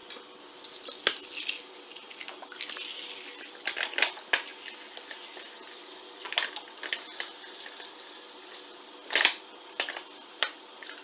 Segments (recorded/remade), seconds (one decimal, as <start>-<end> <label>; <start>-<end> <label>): 0.0-11.0 recorded